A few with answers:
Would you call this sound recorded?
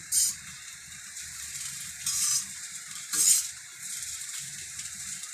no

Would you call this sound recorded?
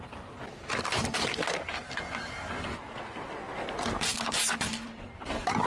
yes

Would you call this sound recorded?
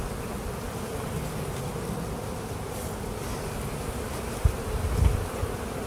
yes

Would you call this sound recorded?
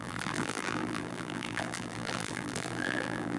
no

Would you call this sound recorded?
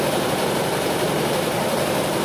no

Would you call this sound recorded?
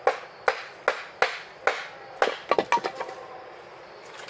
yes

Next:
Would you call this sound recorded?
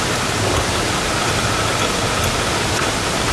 yes